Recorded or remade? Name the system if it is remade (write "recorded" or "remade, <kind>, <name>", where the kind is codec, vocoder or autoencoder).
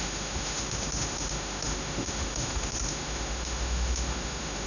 remade, autoencoder, DAC-VAE